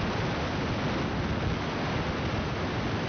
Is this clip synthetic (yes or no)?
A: no